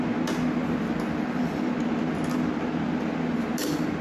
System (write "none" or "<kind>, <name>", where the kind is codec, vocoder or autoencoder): none